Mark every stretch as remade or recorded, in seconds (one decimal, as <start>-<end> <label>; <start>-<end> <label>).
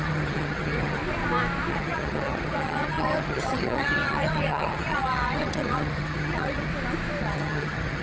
0.0-1.0 remade; 1.0-1.7 recorded; 1.7-6.7 remade; 6.7-7.2 recorded; 7.2-8.0 remade